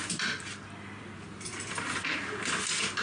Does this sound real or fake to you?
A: fake